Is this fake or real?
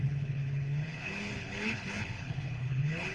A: fake